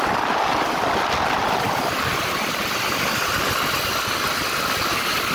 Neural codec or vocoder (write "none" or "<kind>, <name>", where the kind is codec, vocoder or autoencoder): none